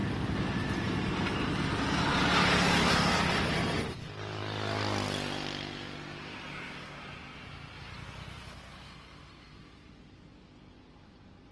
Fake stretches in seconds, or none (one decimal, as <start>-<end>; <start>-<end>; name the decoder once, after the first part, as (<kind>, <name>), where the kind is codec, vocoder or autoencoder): none